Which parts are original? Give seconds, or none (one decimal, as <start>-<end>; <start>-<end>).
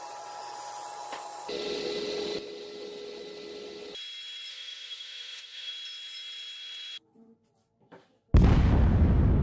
0.0-4.5; 5.7-9.4